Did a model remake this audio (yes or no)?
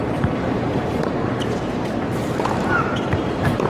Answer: yes